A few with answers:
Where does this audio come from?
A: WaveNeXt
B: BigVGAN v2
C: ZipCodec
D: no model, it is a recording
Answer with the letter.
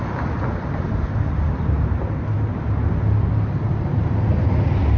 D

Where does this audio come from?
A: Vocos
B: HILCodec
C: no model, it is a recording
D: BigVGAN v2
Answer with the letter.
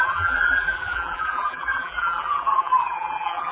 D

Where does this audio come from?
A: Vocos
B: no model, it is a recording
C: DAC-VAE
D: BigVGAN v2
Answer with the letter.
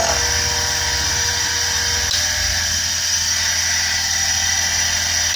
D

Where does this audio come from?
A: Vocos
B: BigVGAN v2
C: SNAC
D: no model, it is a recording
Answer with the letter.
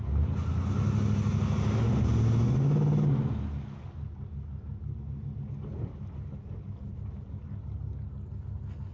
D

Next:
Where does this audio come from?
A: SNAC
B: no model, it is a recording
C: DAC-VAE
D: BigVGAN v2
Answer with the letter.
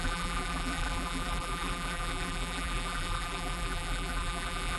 D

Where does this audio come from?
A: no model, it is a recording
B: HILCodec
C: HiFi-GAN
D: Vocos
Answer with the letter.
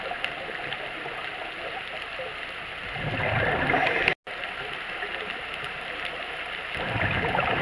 A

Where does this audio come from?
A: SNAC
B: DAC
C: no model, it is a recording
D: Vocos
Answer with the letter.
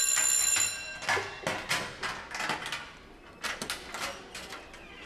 C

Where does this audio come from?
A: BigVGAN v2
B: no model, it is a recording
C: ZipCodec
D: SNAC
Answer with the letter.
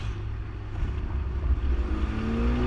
B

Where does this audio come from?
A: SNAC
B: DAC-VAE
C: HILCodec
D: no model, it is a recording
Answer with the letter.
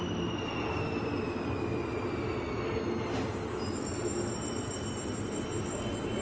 D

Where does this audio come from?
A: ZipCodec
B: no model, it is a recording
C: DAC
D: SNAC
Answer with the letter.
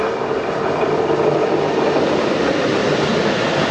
B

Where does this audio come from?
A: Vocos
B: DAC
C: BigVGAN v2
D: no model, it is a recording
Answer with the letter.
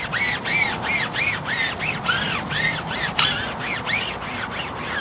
C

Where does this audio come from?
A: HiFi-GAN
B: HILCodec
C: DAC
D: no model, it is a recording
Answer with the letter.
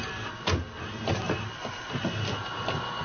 D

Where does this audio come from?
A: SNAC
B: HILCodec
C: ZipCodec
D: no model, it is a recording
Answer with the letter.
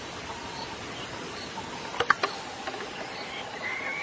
D